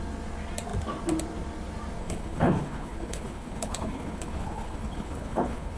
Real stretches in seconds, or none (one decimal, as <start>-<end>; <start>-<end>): 0.0-2.0